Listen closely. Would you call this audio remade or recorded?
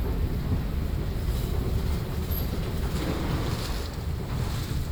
recorded